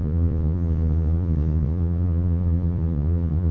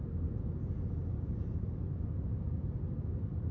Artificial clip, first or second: first